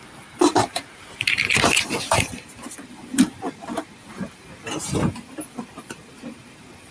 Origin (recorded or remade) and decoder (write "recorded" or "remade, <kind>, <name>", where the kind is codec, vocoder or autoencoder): remade, vocoder, BigVGAN v2